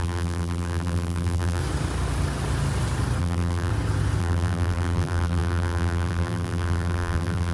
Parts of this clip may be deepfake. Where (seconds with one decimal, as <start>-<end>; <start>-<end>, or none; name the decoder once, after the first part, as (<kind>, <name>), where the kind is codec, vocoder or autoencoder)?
0.0-1.6 (vocoder, BigVGAN v2); 3.2-3.7; 4.2-7.5